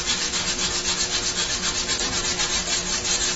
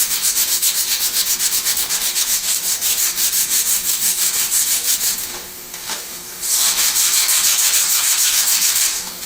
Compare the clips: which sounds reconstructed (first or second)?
second